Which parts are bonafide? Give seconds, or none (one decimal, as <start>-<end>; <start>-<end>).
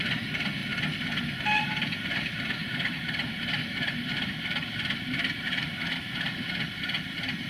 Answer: 0.6-1.6